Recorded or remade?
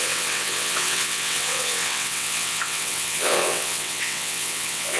remade